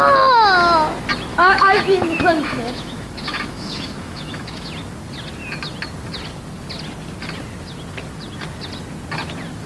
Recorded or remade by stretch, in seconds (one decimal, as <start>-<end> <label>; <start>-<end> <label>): 0.0-1.3 recorded; 1.3-4.7 remade; 4.7-9.7 recorded